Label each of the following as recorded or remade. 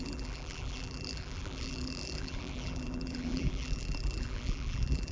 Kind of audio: remade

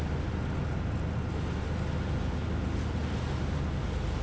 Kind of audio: recorded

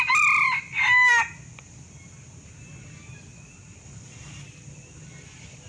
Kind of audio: recorded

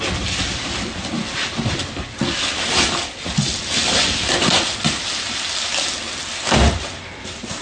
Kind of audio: recorded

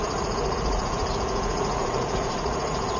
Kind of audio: remade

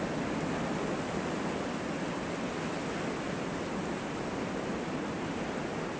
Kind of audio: recorded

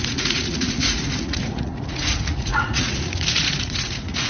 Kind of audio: remade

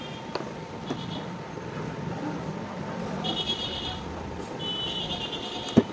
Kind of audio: recorded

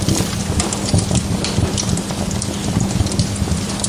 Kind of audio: recorded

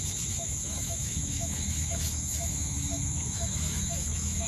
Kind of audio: remade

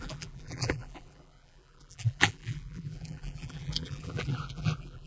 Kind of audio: remade